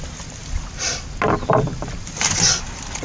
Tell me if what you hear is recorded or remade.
recorded